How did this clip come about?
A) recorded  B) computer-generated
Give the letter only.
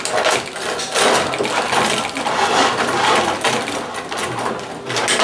A